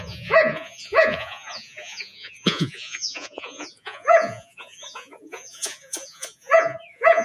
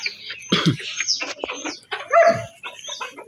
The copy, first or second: first